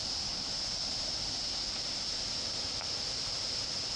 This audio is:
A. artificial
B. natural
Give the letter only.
B